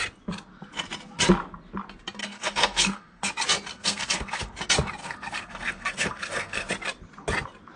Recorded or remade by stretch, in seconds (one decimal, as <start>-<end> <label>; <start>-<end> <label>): 0.0-2.2 recorded; 2.2-3.3 remade; 3.3-3.7 recorded; 3.7-4.5 remade; 4.5-5.0 recorded; 5.0-6.7 remade; 6.7-7.8 recorded